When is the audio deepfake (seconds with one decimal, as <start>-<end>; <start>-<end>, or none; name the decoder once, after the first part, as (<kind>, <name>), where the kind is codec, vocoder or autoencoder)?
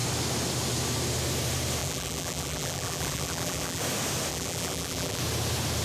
1.8-3.8 (vocoder, BigVGAN v2); 4.3-5.2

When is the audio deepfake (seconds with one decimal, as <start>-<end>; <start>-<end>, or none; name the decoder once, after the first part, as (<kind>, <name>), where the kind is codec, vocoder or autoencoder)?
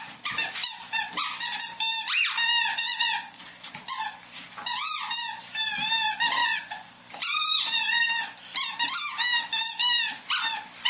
2.7-3.4 (vocoder, Vocos); 6.4-7.0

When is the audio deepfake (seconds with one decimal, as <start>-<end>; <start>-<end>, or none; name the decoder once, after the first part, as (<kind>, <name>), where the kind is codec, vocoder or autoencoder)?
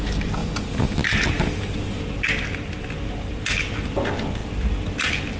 none